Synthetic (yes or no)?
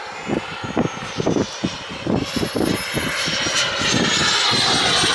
no